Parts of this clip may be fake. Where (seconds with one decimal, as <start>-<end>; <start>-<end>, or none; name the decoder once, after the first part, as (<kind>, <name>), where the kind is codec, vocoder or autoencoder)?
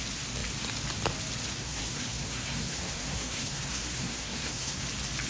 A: 1.6-4.8 (codec, SNAC)